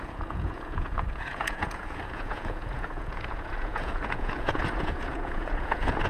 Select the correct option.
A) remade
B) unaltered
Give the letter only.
A